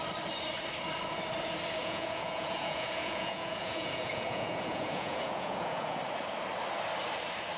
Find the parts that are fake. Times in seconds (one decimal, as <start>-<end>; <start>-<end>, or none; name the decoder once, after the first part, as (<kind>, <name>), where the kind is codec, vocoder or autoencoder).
1.8-6.0 (vocoder, Vocos)